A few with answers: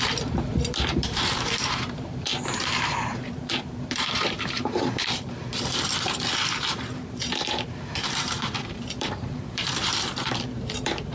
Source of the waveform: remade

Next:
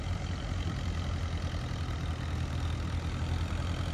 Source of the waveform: recorded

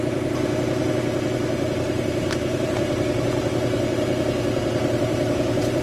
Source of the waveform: remade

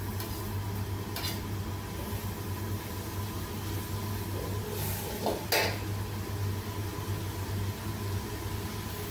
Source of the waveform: recorded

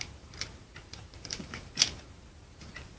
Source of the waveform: remade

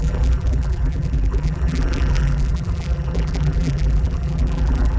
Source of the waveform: remade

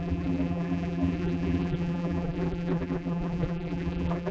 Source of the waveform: remade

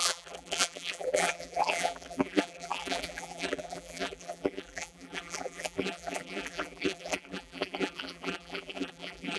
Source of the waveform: remade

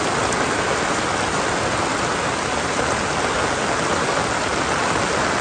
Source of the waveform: recorded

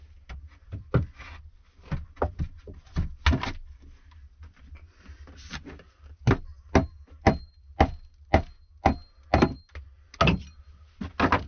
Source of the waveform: recorded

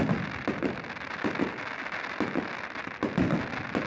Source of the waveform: recorded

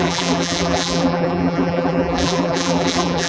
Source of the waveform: remade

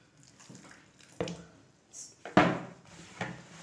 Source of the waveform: recorded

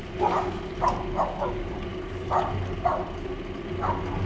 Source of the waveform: recorded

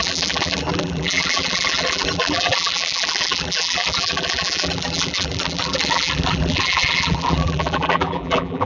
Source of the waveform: remade